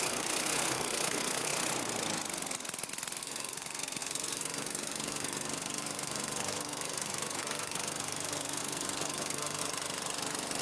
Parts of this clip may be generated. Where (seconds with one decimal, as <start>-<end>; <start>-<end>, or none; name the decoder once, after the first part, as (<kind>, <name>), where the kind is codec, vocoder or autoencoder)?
0.0-1.5 (codec, SNAC); 3.2-9.6